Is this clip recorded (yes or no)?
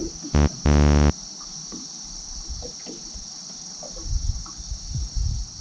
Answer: yes